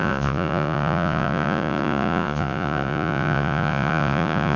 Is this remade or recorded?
remade